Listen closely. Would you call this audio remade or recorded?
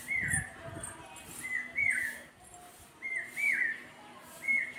recorded